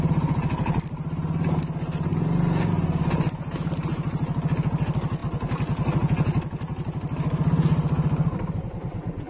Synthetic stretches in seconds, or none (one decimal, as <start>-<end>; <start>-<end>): none